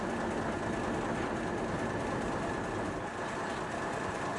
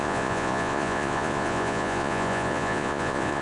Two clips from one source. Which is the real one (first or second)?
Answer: first